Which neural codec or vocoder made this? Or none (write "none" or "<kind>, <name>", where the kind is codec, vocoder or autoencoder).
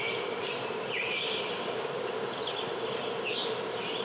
none